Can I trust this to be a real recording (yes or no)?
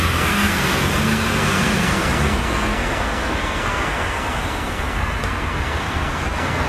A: no